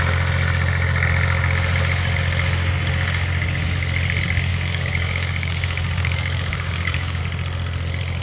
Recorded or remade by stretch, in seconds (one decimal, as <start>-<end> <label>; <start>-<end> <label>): 0.0-4.5 recorded; 4.5-7.2 remade; 7.2-8.2 recorded